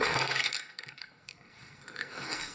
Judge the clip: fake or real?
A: fake